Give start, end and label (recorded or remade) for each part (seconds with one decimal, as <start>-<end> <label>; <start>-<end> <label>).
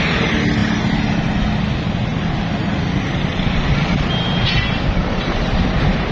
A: 0.0-6.1 recorded